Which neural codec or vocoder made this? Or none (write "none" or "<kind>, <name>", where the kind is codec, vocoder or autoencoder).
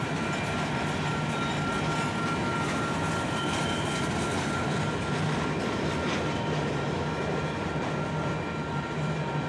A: none